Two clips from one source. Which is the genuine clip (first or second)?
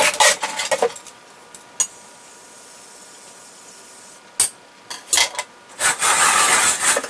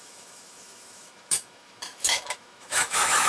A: first